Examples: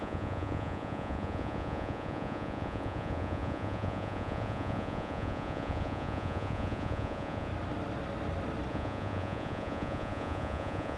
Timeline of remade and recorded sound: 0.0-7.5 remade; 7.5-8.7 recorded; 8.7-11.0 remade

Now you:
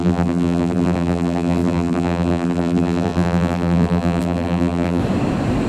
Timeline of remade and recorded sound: 0.0-5.0 remade; 5.0-5.7 recorded